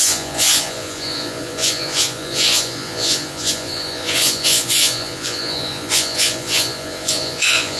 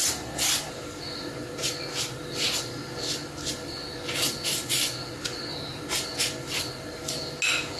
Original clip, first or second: second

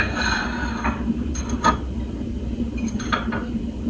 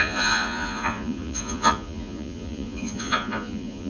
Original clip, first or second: first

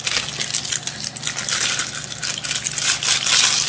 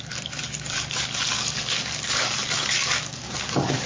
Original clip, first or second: first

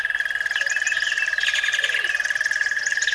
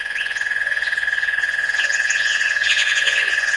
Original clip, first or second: first